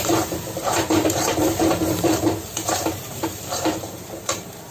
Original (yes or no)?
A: no